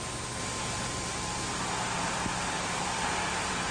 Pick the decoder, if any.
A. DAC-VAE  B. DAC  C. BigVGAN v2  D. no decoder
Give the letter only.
D